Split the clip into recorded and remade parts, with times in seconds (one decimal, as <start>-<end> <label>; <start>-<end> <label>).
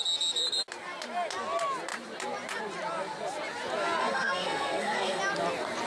0.0-4.0 recorded; 4.0-5.2 remade; 5.2-5.9 recorded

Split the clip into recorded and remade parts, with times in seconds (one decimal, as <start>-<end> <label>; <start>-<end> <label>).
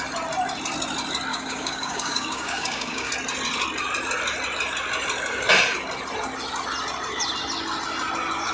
0.0-1.3 recorded; 1.3-3.1 remade; 3.1-8.5 recorded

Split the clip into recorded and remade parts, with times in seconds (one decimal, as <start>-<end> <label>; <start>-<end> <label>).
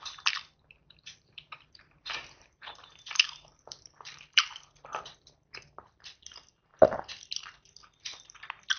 0.0-0.8 recorded; 0.8-4.4 remade; 4.4-8.8 recorded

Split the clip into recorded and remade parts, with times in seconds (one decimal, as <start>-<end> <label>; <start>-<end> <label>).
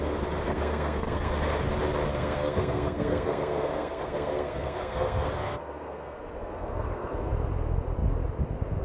0.0-0.5 recorded; 0.5-1.3 remade; 1.3-2.1 recorded; 2.1-7.3 remade; 7.3-8.8 recorded